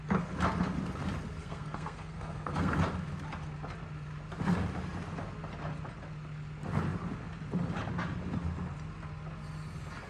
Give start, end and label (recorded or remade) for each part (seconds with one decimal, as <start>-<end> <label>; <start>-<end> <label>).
0.0-1.4 recorded; 1.4-2.7 remade; 2.7-10.1 recorded